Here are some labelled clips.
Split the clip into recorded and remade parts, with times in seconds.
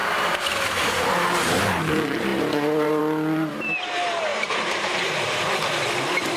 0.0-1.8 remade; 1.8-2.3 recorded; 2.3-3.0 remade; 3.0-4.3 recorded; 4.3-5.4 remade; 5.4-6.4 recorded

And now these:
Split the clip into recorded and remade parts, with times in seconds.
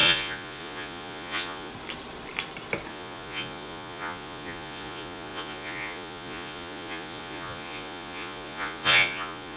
0.0-1.7 remade; 1.7-2.9 recorded; 2.9-9.6 remade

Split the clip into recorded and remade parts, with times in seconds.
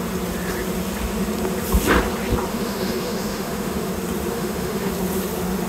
0.0-2.5 recorded; 2.5-3.9 remade; 3.9-4.3 recorded; 4.3-4.9 remade; 4.9-5.7 recorded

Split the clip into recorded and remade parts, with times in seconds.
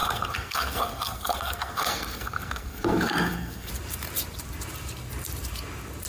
0.0-3.7 remade; 3.7-6.1 recorded